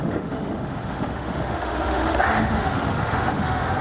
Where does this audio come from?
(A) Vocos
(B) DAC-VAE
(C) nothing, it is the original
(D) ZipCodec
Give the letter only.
B